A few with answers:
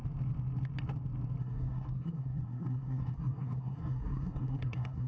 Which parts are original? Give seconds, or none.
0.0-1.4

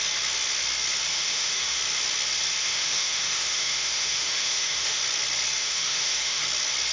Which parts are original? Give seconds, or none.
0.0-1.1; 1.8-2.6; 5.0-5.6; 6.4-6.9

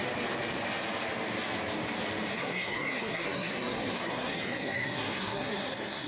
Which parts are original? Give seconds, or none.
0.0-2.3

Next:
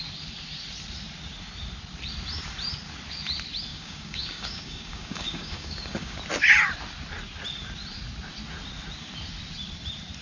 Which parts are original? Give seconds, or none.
0.0-3.7; 6.2-10.2

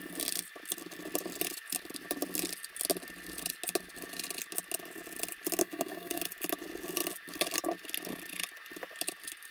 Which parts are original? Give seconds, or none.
0.0-5.6; 6.2-9.5

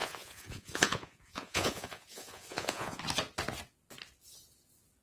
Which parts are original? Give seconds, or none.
3.0-5.0